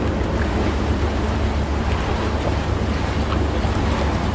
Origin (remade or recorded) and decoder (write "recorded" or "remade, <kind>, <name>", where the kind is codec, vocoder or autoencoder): recorded